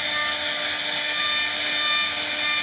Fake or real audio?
real